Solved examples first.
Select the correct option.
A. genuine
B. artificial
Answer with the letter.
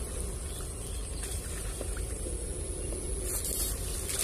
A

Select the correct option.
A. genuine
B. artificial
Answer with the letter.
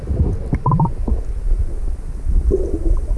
A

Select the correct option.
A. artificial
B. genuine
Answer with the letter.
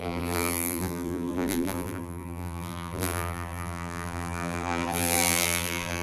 A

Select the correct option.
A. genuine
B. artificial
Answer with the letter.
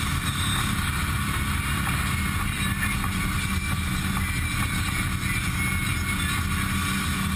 A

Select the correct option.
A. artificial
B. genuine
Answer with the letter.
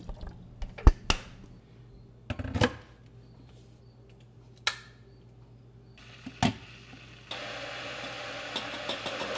B